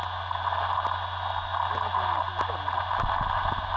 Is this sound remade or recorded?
recorded